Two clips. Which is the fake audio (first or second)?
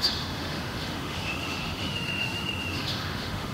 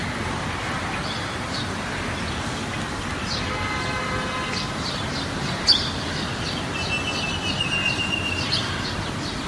first